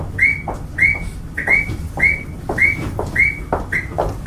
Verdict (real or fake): real